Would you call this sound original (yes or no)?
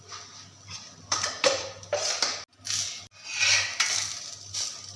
yes